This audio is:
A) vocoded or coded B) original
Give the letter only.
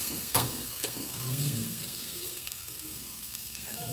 A